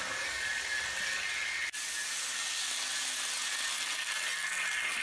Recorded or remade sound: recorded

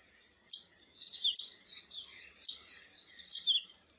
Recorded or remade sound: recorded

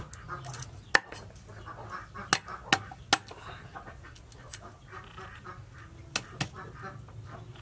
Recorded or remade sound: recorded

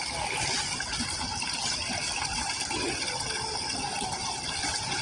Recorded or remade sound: recorded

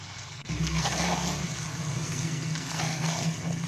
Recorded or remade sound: remade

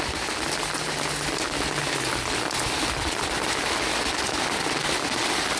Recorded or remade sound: recorded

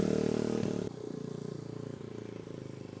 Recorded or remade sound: recorded